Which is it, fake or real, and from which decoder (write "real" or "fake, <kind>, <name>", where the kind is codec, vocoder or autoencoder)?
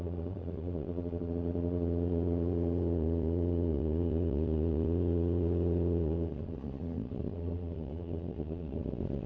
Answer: fake, vocoder, Vocos